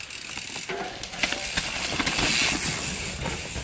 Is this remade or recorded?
recorded